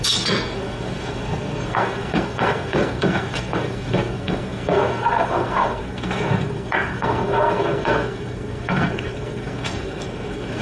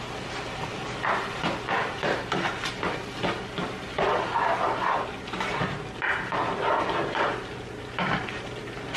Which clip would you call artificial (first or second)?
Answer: first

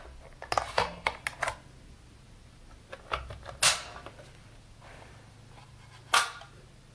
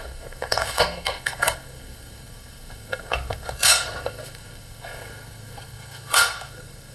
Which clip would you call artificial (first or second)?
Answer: second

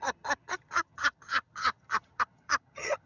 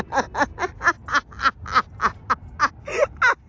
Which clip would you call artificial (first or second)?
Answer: first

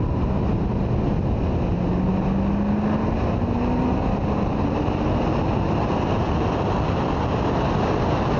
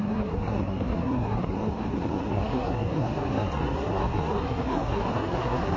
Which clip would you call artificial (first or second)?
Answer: second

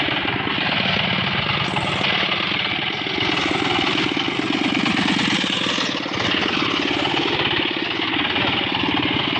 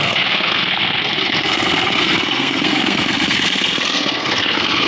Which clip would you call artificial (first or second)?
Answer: second